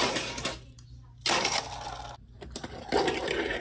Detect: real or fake real